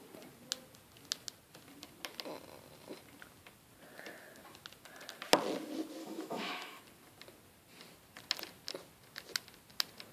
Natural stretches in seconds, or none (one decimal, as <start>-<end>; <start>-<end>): 0.0-6.0; 6.8-10.1

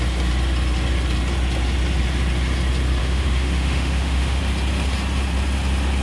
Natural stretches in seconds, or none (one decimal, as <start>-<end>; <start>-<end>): 0.0-3.0; 4.4-6.0

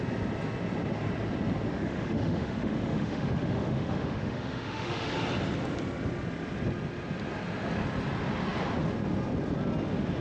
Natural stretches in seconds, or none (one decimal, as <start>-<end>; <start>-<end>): 0.0-1.7; 5.1-10.2

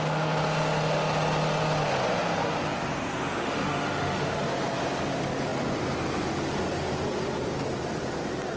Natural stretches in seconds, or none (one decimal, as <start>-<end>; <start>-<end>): 0.0-3.4; 4.4-8.6

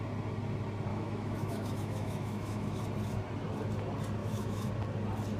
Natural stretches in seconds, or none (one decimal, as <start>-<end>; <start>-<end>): 0.0-0.9; 2.8-4.2; 4.7-5.4

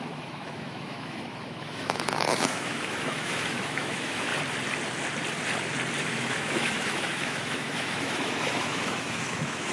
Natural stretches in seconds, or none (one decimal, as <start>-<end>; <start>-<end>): 4.3-6.0